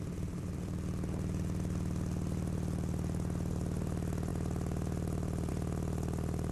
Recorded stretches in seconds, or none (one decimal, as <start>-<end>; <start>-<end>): 0.0-6.5

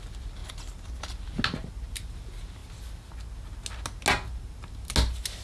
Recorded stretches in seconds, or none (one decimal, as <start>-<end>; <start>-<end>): 0.0-5.4

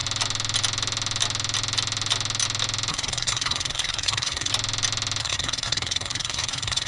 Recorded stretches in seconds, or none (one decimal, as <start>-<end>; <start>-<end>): 0.0-2.9; 4.5-5.2

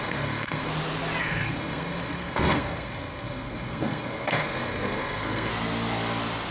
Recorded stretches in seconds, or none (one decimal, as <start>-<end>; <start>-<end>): 0.7-1.2; 5.5-6.5

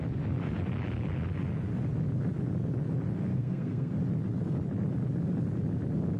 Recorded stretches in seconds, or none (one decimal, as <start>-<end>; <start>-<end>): 0.0-3.3; 3.9-6.2

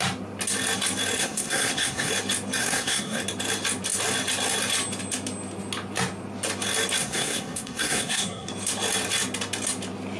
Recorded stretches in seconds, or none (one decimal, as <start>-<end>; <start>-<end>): 0.0-1.2; 2.1-2.6; 3.2-7.0; 8.5-10.2

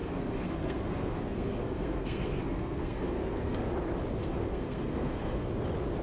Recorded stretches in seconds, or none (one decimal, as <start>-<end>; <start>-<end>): 3.6-4.2; 5.5-6.0

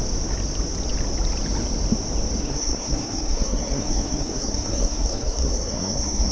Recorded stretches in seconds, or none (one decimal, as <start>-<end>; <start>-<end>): 0.0-2.4